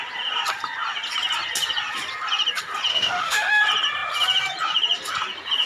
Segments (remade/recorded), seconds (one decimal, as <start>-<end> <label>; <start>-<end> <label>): 0.0-2.9 recorded; 2.9-3.6 remade; 3.6-5.7 recorded